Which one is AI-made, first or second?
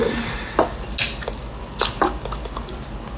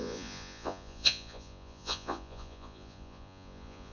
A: second